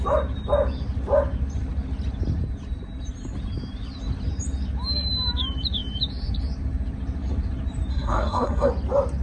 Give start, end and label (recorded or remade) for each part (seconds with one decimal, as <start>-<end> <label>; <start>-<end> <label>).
0.0-7.9 recorded; 7.9-8.7 remade; 8.7-9.2 recorded